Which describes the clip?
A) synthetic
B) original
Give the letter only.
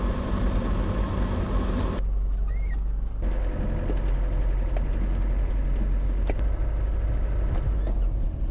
B